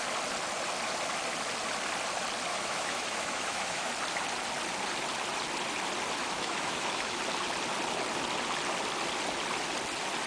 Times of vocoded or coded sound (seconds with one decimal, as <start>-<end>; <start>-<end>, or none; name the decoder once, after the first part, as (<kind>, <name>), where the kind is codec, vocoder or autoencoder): 2.5-3.9 (autoencoder, DAC-VAE); 6.2-7.2